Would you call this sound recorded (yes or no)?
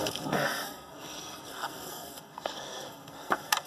no